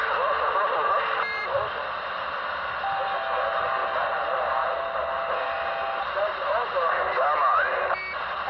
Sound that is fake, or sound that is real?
real